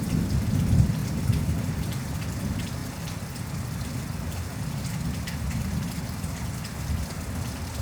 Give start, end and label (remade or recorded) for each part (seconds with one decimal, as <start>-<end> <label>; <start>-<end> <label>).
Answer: 0.0-1.0 recorded; 1.0-2.0 remade; 2.0-7.8 recorded